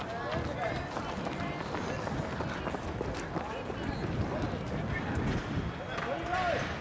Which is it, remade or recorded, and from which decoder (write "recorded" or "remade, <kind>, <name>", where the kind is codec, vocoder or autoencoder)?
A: recorded